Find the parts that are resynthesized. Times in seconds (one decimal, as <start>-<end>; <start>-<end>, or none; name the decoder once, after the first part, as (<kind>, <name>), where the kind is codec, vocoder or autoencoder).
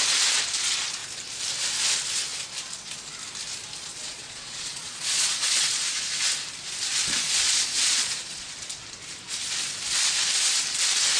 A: 3.9-6.2 (vocoder, Vocos); 7.0-8.5